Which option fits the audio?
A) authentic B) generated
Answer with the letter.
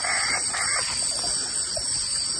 A